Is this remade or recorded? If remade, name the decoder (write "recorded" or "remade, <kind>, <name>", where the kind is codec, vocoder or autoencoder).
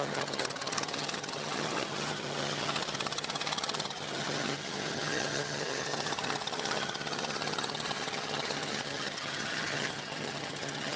remade, vocoder, HiFi-GAN